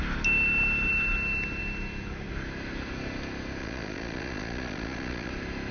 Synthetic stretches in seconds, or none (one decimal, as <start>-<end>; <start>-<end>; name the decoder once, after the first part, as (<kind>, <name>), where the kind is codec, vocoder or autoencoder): 3.6-5.3 (vocoder, Vocos)